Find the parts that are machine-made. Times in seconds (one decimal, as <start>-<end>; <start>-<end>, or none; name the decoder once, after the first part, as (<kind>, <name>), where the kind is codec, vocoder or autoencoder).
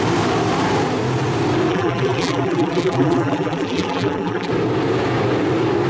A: 1.7-4.5 (vocoder, BigVGAN v2)